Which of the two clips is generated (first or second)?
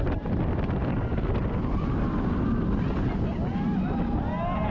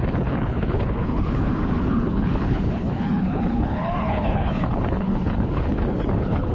second